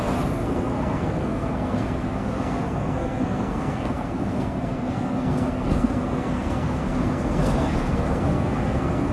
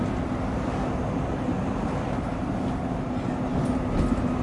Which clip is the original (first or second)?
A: second